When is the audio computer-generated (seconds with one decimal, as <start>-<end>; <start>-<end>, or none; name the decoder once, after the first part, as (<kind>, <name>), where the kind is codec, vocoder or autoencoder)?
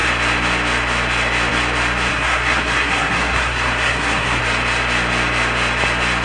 2.1-4.4 (codec, SNAC)